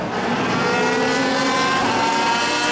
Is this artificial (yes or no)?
no